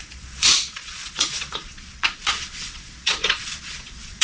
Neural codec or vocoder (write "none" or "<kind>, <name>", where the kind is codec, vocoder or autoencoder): vocoder, Vocos